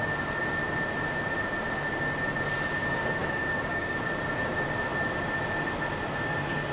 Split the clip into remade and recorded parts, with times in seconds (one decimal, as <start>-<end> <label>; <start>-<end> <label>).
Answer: 0.0-3.2 recorded; 3.2-4.0 remade; 4.0-6.7 recorded